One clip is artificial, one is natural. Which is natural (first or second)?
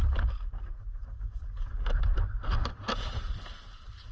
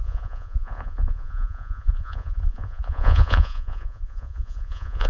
first